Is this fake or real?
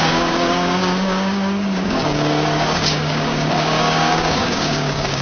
fake